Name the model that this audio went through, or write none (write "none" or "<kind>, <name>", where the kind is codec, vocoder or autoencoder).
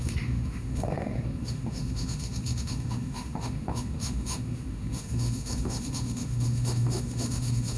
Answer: autoencoder, DAC-VAE